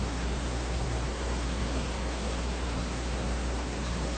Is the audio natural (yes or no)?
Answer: no